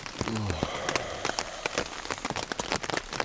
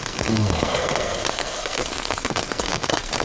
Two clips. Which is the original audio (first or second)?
first